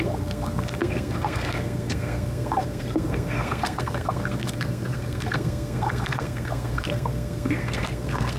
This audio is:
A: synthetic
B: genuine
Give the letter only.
A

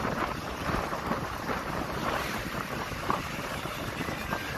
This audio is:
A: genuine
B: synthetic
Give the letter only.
B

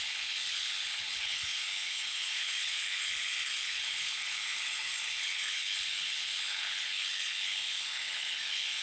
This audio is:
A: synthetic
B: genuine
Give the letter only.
A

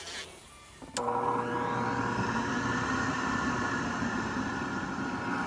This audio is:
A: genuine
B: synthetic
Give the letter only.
A